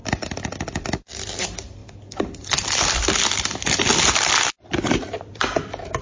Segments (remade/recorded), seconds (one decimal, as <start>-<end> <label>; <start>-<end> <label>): 0.0-6.0 remade